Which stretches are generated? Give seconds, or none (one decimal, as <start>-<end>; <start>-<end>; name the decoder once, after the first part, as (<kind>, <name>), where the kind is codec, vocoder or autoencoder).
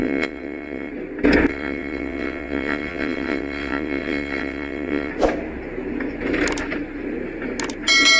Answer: 0.0-0.9 (vocoder, WaveNeXt); 1.5-5.1